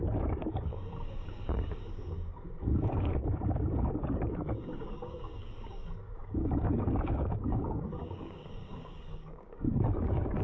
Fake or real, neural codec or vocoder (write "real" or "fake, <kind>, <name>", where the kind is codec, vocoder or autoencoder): fake, codec, DAC